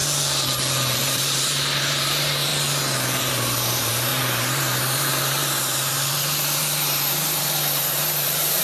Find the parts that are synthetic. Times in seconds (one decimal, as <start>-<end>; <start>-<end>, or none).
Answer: 1.0-2.5; 3.2-8.6